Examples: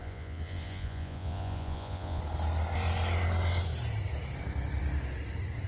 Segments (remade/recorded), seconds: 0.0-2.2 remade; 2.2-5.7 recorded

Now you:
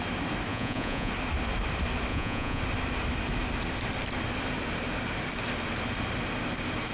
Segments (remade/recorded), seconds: 0.0-0.5 recorded; 0.5-1.1 remade; 1.1-2.1 recorded; 2.1-2.6 remade; 2.6-6.9 recorded

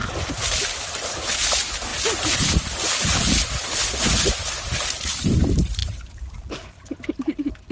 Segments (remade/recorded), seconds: 0.0-5.8 recorded; 5.8-6.9 remade; 6.9-7.7 recorded

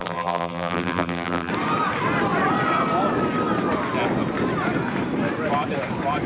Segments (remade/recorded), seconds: 0.0-1.5 remade; 1.5-6.3 recorded